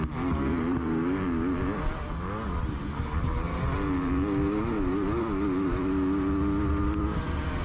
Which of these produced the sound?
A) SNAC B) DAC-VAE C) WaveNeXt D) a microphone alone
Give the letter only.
D